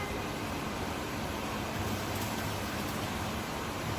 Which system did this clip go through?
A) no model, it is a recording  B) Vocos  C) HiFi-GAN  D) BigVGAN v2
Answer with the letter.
D